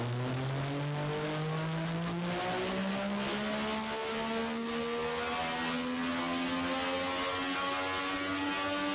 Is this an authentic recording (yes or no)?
yes